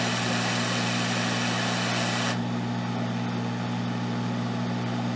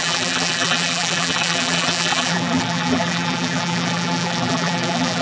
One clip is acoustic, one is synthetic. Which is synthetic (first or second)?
second